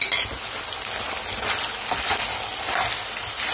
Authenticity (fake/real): real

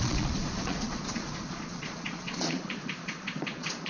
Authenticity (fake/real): fake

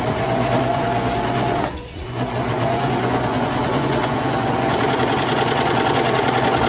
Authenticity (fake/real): fake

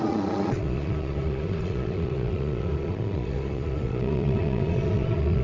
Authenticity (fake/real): fake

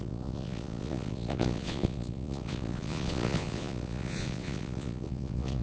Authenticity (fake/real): fake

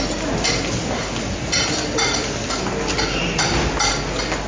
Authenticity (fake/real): real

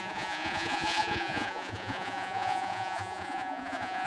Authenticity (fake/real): fake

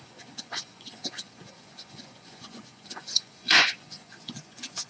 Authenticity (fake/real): fake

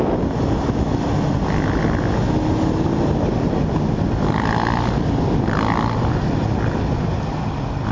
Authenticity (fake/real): real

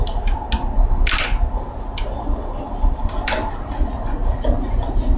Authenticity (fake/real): real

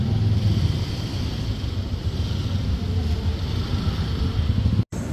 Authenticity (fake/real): real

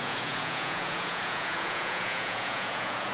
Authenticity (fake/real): fake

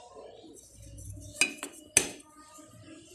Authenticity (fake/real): real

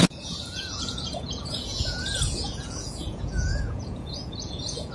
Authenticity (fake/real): fake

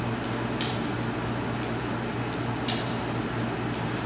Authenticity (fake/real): real